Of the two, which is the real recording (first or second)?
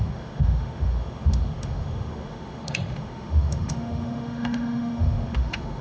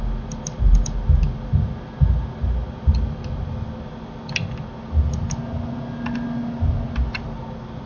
second